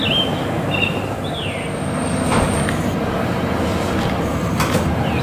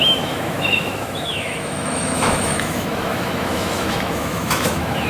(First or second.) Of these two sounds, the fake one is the second